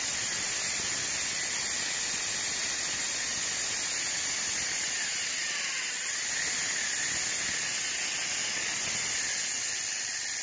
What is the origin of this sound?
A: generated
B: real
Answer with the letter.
B